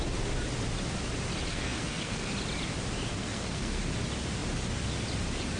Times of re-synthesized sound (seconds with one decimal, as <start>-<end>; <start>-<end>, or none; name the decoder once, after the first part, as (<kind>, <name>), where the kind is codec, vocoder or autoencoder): 1.5-2.3 (codec, SNAC); 3.1-3.8